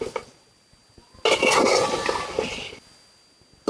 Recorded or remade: recorded